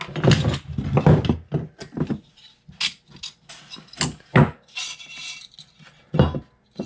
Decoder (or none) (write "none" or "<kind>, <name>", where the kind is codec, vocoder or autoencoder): none